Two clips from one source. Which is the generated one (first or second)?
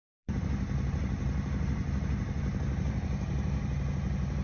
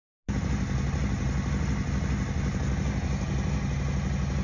first